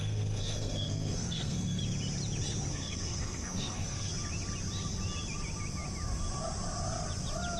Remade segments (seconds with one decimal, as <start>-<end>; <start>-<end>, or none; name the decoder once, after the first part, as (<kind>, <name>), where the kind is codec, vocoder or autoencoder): 0.0-1.8 (codec, SNAC); 2.7-4.1